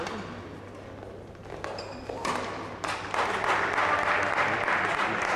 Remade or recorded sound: recorded